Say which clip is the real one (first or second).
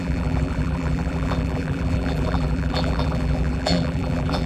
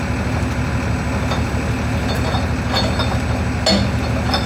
second